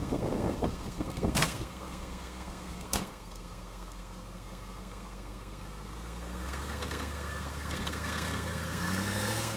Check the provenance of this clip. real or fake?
fake